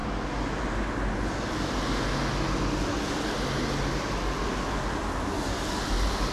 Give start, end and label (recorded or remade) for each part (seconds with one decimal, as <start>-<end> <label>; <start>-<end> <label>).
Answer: 0.0-6.3 recorded